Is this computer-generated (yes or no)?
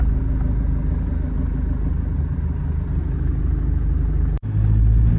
no